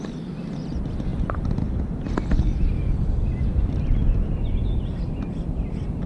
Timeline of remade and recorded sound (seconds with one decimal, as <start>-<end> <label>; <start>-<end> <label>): 0.0-6.1 recorded